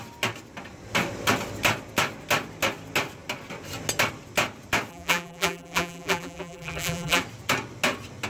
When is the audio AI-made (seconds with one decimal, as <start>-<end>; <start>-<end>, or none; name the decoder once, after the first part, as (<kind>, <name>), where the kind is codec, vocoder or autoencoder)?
4.9-7.2 (vocoder, BigVGAN v2)

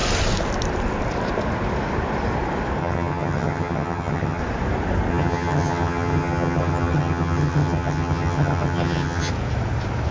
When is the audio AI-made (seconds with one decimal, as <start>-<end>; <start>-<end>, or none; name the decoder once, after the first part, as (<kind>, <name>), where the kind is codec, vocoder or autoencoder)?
2.8-4.4 (vocoder, HiFi-GAN); 5.1-9.3

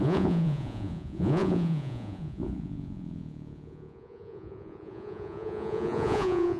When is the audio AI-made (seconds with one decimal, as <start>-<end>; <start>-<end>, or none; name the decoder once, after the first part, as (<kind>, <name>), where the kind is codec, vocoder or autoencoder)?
0.0-6.6 (vocoder, Vocos)

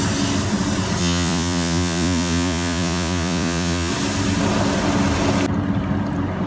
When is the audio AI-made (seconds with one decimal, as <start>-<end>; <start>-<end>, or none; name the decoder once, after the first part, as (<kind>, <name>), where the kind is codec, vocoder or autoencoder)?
1.0-3.9 (vocoder, Vocos)

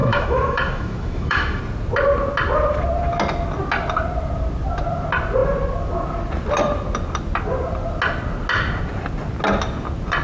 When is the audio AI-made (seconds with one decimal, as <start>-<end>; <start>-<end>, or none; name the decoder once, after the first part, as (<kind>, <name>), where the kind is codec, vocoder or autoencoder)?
0.0-1.6 (autoencoder, DAC-VAE)

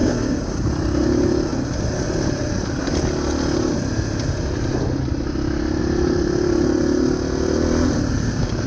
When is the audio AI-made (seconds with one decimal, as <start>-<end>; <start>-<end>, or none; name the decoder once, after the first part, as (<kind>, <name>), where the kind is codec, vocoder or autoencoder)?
0.0-0.7 (codec, DAC)

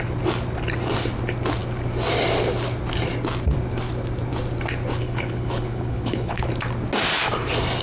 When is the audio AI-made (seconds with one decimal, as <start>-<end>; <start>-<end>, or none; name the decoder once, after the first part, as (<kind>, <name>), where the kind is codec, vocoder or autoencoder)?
5.0-6.5 (codec, HILCodec)